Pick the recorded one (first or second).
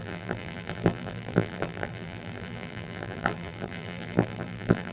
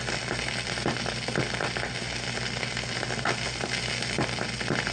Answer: second